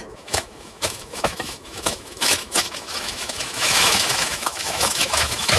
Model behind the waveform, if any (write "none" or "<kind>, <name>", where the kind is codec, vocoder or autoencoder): autoencoder, DAC-VAE